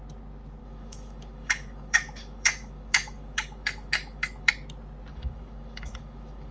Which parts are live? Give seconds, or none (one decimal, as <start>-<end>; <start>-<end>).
0.0-0.6; 4.5-5.1

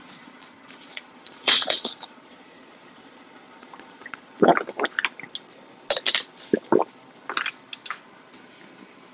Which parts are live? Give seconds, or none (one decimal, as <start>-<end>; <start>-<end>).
4.5-9.1

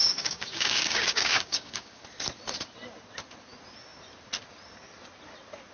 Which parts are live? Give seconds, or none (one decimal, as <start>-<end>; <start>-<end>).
2.0-5.7

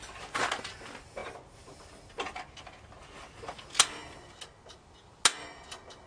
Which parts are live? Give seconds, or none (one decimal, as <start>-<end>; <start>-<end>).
0.0-6.1

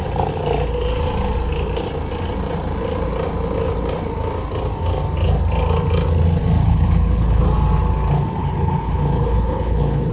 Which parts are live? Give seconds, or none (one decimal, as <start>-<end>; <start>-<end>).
0.0-6.6; 7.4-8.4

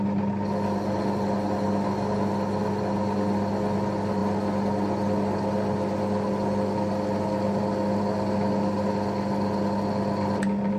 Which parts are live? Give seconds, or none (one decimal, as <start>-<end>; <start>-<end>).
0.0-10.8